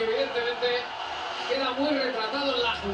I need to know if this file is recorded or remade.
recorded